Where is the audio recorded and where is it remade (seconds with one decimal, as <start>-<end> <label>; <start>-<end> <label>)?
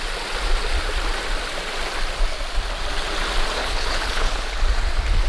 0.0-3.6 recorded; 3.6-4.6 remade; 4.6-5.3 recorded